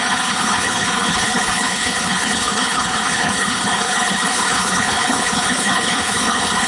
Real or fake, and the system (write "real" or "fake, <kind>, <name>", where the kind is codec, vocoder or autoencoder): fake, codec, HILCodec